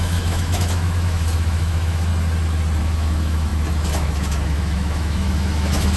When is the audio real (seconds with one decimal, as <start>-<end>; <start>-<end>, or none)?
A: 2.1-2.8